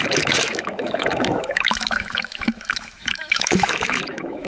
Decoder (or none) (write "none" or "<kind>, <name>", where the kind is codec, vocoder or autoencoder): autoencoder, DAC-VAE